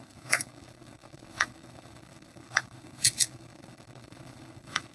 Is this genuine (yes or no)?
no